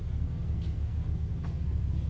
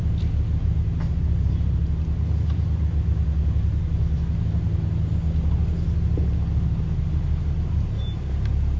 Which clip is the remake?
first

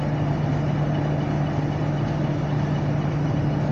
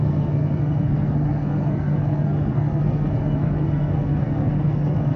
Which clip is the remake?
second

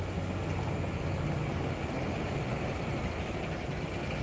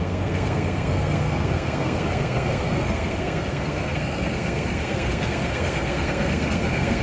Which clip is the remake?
second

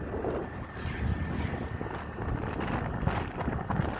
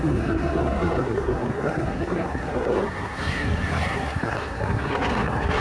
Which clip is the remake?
second